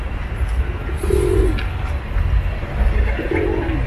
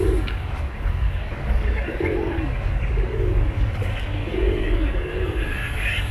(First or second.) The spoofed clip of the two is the second